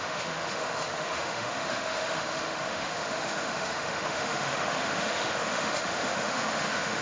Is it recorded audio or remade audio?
remade